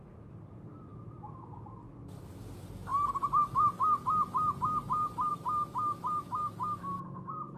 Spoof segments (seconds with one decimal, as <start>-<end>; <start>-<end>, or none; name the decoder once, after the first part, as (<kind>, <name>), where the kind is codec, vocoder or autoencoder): 0.9-2.4 (vocoder, BigVGAN v2)